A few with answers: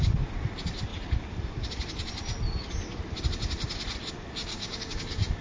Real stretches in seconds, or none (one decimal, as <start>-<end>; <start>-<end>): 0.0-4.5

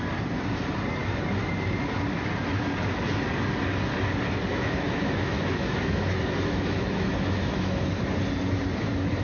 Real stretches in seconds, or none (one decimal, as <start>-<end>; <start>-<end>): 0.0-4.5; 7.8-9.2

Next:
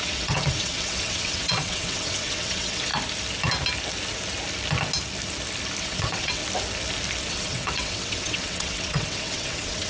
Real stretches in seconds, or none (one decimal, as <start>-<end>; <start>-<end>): 2.9-5.8; 6.4-7.3